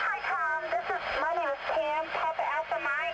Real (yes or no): yes